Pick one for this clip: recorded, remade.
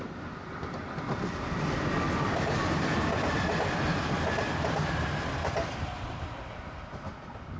recorded